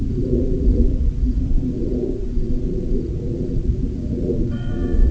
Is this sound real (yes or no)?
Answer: no